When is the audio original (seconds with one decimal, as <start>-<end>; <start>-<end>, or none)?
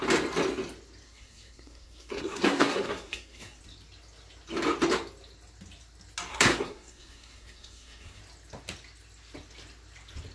0.0-1.0; 3.6-6.3; 8.2-10.3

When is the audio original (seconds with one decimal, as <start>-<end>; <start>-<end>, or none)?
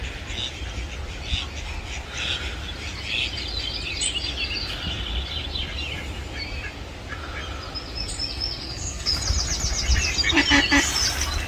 0.0-8.6; 9.1-11.5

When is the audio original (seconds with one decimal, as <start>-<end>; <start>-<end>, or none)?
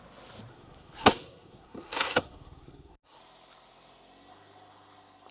0.0-0.5; 3.2-5.3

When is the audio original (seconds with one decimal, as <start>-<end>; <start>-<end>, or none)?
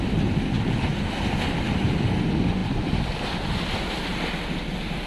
0.0-5.1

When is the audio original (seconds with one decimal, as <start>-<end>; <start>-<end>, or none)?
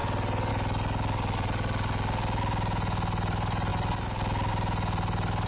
0.0-5.5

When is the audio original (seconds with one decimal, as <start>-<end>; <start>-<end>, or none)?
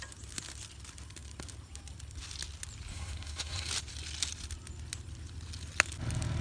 0.0-2.9; 3.7-6.4